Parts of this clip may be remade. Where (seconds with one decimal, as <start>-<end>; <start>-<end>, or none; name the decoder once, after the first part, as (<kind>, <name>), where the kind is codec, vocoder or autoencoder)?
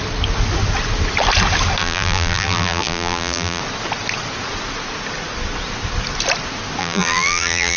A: 1.8-3.6 (vocoder, BigVGAN v2); 6.8-7.8